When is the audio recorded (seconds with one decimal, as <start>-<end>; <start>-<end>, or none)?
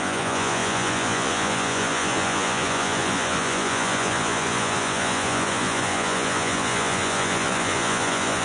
none